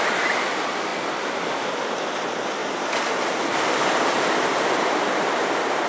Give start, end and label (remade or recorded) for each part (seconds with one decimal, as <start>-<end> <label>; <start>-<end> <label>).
0.0-2.6 remade; 2.6-4.1 recorded; 4.1-5.9 remade